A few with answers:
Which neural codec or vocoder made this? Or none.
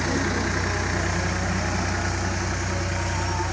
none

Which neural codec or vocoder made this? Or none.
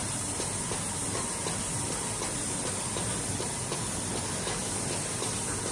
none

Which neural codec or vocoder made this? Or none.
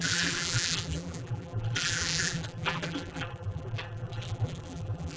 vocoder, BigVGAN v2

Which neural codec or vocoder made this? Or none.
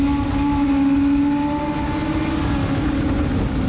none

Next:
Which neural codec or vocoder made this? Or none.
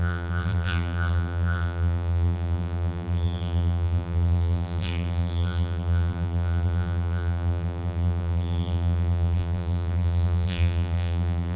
vocoder, BigVGAN v2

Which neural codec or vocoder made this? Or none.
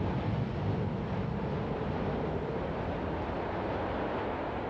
none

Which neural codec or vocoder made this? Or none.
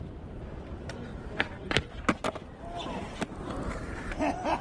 vocoder, BigVGAN v2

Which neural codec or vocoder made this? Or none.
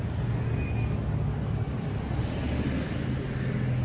none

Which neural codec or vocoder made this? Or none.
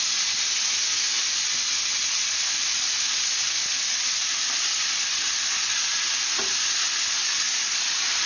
none